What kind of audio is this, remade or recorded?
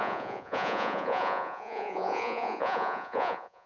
remade